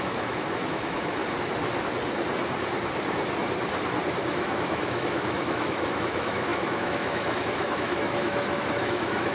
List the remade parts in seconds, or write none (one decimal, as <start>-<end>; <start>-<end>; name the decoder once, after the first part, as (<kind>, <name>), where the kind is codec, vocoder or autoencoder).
0.0-1.2 (autoencoder, DAC-VAE); 4.2-9.3